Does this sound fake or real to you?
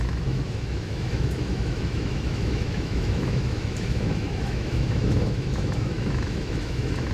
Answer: fake